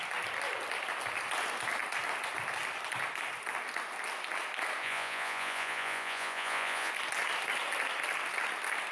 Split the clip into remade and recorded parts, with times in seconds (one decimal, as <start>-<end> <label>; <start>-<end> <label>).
0.0-4.8 recorded; 4.8-6.9 remade; 6.9-8.9 recorded